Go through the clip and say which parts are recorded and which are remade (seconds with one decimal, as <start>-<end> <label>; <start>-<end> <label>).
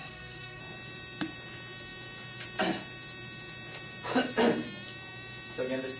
0.0-0.6 remade; 0.6-6.0 recorded